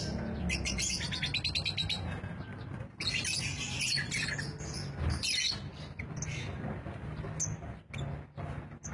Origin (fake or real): real